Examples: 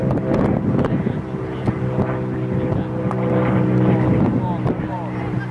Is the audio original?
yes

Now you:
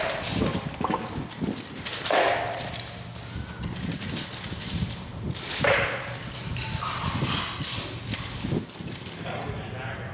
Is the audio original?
yes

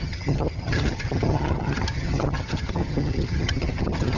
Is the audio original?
no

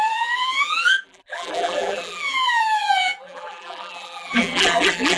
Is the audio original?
no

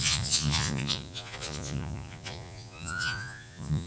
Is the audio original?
no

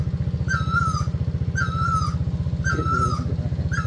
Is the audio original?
yes